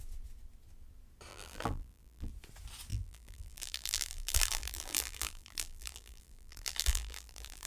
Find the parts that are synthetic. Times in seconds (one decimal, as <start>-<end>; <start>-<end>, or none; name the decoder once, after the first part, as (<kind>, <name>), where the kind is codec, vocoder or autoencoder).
1.3-2.3 (vocoder, BigVGAN v2); 2.9-7.7